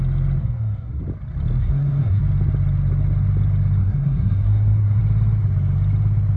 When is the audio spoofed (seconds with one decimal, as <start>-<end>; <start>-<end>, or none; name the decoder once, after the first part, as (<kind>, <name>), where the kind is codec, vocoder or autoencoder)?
0.4-1.0 (codec, SNAC); 1.6-2.2; 3.8-5.0